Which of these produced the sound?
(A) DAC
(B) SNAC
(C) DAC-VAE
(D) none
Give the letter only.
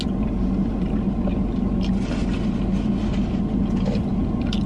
D